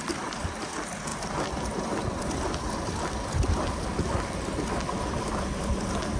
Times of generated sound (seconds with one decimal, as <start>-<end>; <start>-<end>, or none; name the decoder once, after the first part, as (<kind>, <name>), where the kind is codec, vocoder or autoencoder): none